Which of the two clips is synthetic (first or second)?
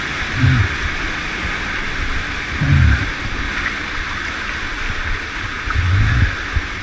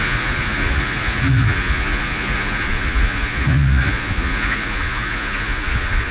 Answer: second